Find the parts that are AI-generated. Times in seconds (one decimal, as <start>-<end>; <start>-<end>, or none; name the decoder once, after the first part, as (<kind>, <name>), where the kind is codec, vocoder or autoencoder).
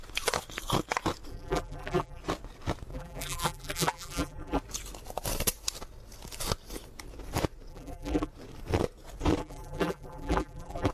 1.3-2.2 (vocoder, BigVGAN v2); 2.9-4.6; 7.7-8.3; 9.4-10.9